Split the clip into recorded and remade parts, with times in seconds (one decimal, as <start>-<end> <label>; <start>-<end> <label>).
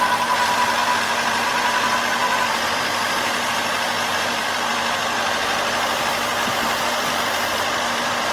0.0-0.8 remade; 0.8-1.5 recorded; 1.5-8.3 remade